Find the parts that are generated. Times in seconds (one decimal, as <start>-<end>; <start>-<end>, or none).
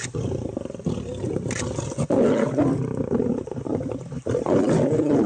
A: none